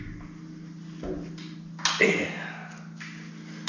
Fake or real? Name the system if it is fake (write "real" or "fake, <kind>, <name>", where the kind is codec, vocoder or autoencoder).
real